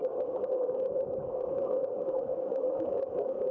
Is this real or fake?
fake